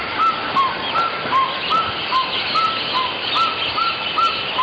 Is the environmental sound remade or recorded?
recorded